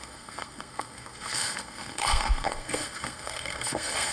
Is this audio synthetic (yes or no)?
yes